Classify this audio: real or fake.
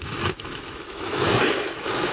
fake